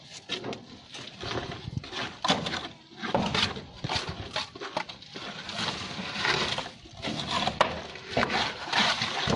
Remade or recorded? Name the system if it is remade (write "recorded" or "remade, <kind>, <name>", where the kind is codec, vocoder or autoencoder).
recorded